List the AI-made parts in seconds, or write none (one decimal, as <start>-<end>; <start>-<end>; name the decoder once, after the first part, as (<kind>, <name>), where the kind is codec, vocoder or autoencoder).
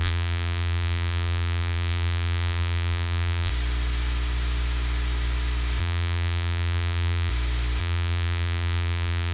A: 0.0-3.5 (vocoder, BigVGAN v2); 5.8-7.3; 7.8-9.3